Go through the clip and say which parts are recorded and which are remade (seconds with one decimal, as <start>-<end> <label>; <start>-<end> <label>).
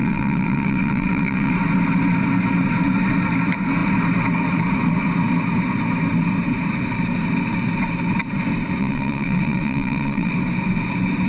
0.0-1.5 remade; 1.5-8.8 recorded; 8.8-10.3 remade; 10.3-11.3 recorded